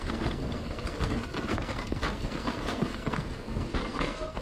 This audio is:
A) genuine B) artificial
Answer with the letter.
B